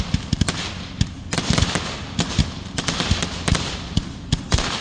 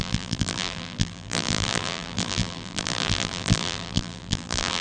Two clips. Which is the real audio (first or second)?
first